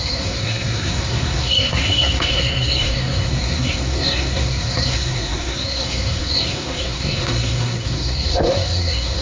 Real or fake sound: fake